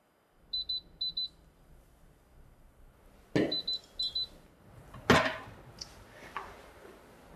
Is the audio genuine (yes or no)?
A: yes